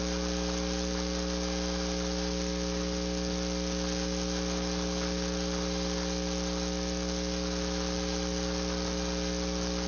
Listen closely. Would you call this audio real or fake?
real